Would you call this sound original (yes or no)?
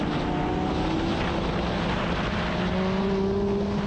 yes